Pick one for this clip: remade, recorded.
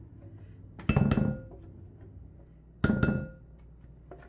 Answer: recorded